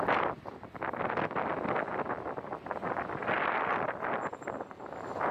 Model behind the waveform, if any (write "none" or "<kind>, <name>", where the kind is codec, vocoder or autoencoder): none